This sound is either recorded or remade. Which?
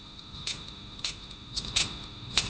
remade